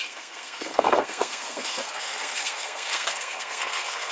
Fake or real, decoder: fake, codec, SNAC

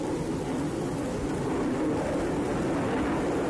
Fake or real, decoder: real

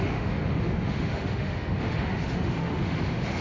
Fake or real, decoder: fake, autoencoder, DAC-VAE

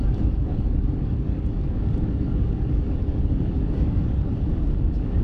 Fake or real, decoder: fake, codec, DAC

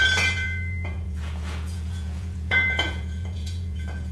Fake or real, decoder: fake, vocoder, Vocos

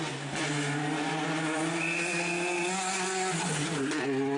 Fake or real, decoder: real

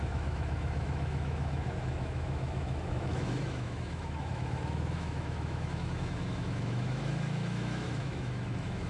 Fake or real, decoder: fake, autoencoder, DAC-VAE